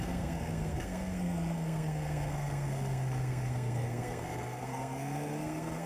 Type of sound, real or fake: fake